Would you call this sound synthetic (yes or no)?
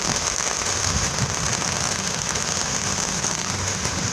yes